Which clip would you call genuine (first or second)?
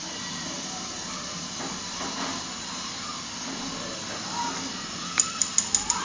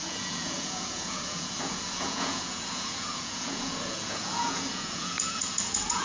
first